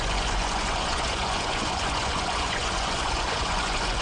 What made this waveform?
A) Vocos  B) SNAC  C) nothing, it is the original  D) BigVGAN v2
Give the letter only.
A